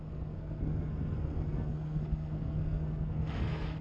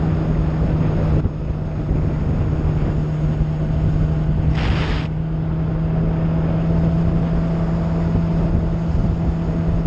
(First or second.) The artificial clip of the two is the first